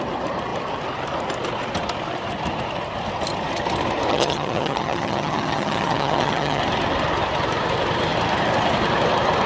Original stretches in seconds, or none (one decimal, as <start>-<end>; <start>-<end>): 0.0-4.1; 6.6-9.5